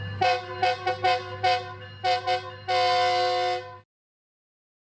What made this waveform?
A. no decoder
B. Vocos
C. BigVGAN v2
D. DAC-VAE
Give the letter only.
A